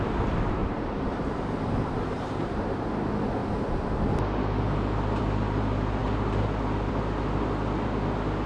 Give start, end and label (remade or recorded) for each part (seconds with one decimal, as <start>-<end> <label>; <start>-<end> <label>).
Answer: 0.0-0.6 recorded; 0.6-2.9 remade; 2.9-8.5 recorded